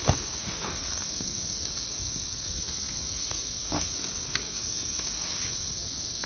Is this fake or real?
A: fake